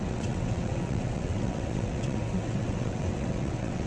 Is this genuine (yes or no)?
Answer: no